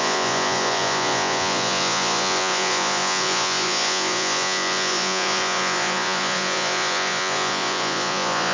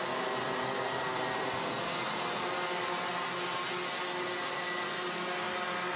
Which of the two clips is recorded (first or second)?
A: second